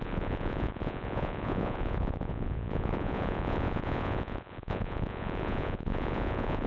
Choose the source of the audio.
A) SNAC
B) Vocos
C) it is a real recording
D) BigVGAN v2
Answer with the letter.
B